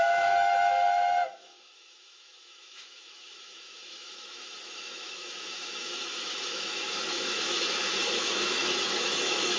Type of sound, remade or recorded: remade